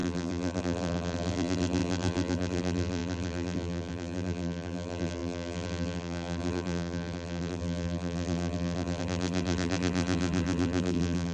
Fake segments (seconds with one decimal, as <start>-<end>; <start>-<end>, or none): 0.0-11.3